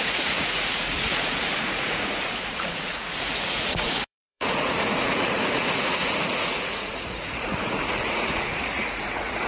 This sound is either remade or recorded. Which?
remade